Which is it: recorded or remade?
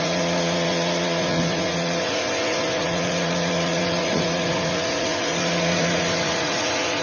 remade